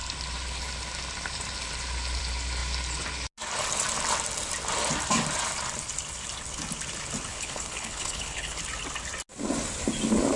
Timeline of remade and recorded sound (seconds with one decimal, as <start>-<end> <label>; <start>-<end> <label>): 0.0-7.3 recorded; 7.3-8.6 remade; 8.6-10.4 recorded